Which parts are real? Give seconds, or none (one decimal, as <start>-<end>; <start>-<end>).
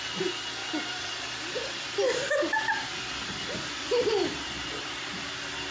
0.0-0.6; 1.2-2.5; 5.1-5.7